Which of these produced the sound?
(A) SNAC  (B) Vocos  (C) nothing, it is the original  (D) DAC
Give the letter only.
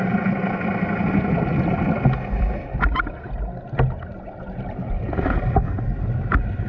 C